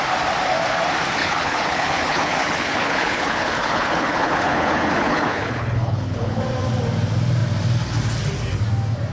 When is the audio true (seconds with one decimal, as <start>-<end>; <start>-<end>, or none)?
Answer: 0.0-1.2; 6.4-9.1